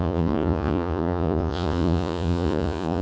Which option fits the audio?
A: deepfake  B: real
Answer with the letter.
A